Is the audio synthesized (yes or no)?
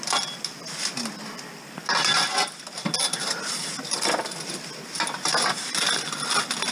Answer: no